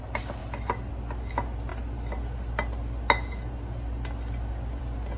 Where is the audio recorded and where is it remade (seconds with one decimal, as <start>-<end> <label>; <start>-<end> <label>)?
0.0-5.2 recorded

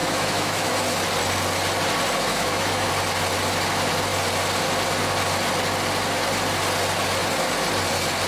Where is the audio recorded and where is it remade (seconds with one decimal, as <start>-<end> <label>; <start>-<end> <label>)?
0.0-0.7 remade; 0.7-2.3 recorded; 2.3-2.9 remade; 2.9-8.3 recorded

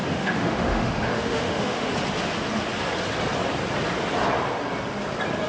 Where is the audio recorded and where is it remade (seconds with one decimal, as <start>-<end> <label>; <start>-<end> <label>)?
0.0-1.9 remade; 1.9-5.5 recorded

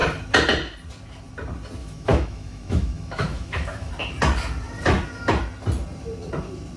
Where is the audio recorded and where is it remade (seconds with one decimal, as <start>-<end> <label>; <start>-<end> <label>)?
0.0-1.8 recorded; 1.8-3.9 remade; 3.9-6.8 recorded

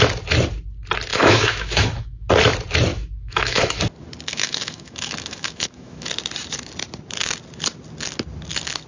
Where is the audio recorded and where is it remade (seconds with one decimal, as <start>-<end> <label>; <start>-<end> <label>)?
0.0-1.1 recorded; 1.1-2.3 remade; 2.3-2.9 recorded; 2.9-3.8 remade; 3.8-4.3 recorded; 4.3-6.1 remade; 6.1-8.9 recorded

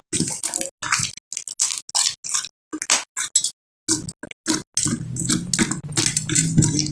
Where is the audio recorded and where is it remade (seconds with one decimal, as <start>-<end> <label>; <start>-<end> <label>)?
0.0-6.9 recorded